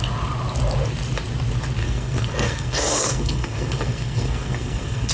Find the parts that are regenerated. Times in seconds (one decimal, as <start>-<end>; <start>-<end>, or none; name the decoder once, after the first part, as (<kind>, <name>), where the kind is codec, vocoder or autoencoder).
1.8-5.1 (codec, SNAC)